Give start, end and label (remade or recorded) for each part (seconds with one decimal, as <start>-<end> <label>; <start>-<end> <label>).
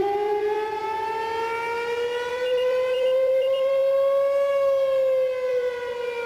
0.0-0.8 remade; 0.8-2.3 recorded; 2.3-3.8 remade; 3.8-5.5 recorded; 5.5-6.3 remade